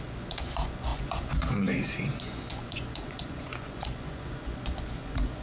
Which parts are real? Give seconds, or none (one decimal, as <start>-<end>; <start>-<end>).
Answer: none